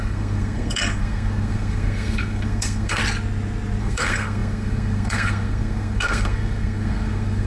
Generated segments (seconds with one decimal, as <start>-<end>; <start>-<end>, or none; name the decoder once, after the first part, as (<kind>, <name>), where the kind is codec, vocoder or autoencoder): 0.0-3.0 (codec, SNAC); 3.8-7.5